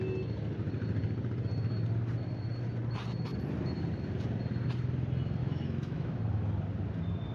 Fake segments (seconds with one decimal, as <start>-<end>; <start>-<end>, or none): 5.4-6.2